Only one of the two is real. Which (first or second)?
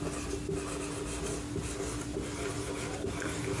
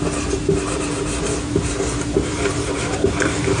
first